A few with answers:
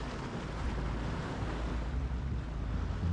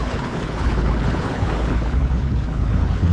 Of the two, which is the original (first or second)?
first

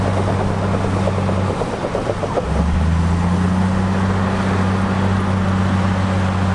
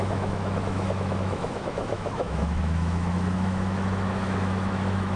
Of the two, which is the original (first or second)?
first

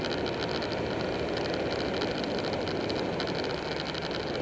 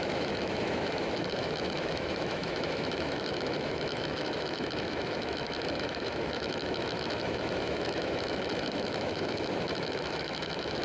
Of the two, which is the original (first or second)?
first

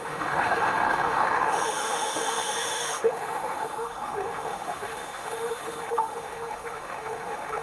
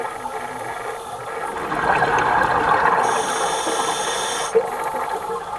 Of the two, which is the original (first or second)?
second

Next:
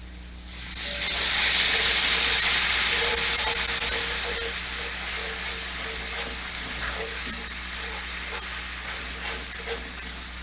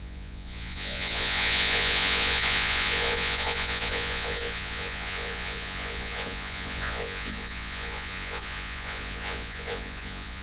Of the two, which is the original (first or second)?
first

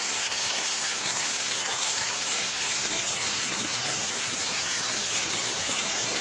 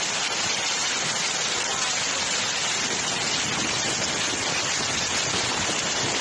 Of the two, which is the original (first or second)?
second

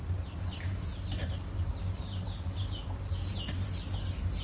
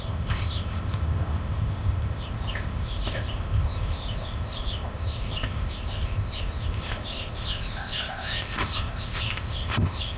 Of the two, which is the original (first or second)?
first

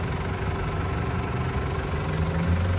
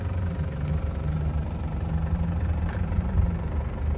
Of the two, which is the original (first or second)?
first